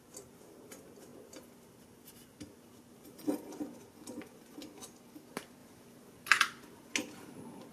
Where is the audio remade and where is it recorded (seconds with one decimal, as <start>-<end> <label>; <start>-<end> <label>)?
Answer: 0.0-7.7 recorded